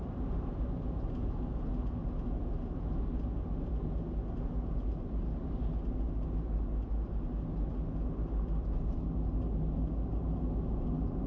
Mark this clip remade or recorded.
recorded